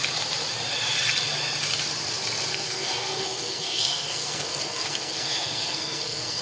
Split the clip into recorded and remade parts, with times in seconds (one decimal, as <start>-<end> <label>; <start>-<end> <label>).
0.0-2.5 recorded; 2.5-6.4 remade